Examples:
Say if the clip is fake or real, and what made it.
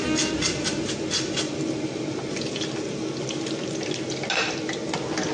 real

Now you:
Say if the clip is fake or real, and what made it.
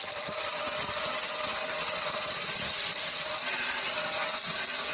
real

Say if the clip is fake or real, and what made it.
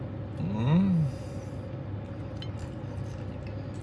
real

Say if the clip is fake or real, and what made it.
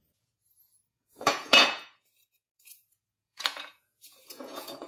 fake, vocoder, Vocos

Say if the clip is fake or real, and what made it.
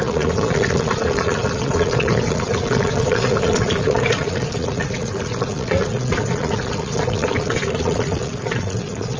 fake, vocoder, Vocos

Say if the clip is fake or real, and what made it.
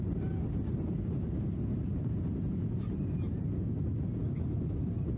real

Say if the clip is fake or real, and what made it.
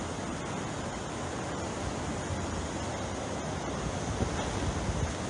real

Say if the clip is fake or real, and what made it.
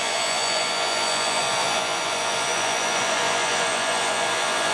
fake, vocoder, Vocos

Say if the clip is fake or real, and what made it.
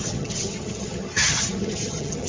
fake, vocoder, HiFi-GAN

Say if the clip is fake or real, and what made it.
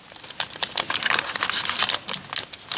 real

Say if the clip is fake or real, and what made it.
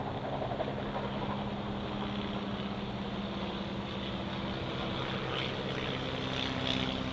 real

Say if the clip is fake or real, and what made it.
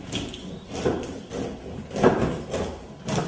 real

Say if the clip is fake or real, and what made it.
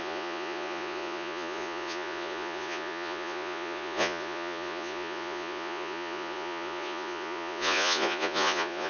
fake, vocoder, Vocos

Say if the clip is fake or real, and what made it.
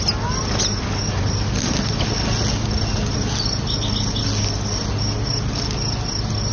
real